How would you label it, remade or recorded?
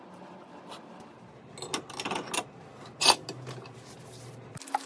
recorded